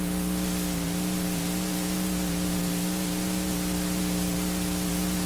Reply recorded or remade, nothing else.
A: recorded